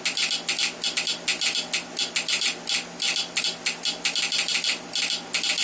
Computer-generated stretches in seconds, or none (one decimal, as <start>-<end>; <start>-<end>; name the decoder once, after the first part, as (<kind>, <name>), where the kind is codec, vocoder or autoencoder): none